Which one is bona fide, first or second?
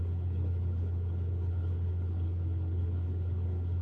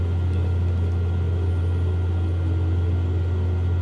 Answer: second